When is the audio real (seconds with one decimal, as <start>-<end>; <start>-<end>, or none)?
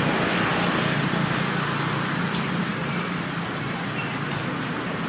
0.0-2.6